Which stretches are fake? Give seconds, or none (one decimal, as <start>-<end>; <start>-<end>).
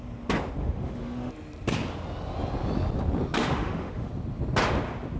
0.6-1.3; 3.4-4.1